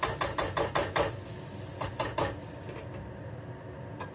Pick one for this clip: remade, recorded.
recorded